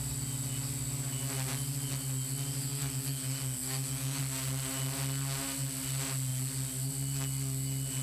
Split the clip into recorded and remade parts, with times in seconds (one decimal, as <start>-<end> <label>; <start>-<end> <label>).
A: 0.0-2.6 recorded; 2.6-4.2 remade; 4.2-8.0 recorded

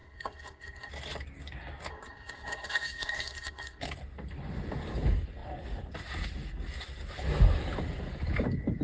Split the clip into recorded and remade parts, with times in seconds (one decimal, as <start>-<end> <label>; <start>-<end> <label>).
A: 0.0-0.9 remade; 0.9-1.9 recorded; 1.9-3.8 remade; 3.8-8.8 recorded

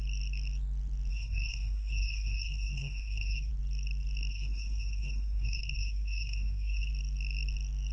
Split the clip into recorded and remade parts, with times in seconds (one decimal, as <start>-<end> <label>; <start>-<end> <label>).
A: 0.0-1.1 recorded; 1.1-3.5 remade; 3.5-4.3 recorded; 4.3-6.9 remade; 6.9-7.9 recorded